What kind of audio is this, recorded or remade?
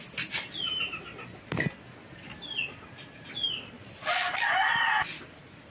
recorded